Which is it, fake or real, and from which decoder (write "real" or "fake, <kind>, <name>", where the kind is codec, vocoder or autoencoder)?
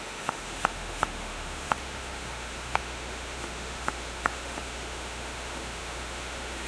fake, autoencoder, DAC-VAE